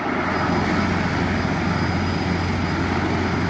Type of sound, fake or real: real